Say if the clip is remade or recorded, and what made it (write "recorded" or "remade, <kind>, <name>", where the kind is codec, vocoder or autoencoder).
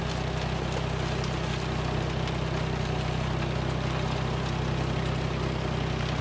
recorded